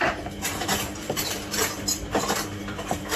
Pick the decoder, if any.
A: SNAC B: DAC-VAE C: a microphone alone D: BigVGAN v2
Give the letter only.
D